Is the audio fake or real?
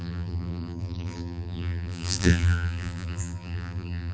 fake